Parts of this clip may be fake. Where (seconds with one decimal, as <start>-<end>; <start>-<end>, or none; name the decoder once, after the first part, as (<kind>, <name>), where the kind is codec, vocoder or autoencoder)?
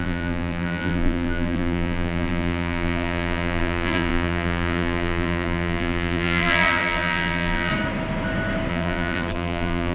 0.0-7.7 (vocoder, BigVGAN v2); 8.7-9.9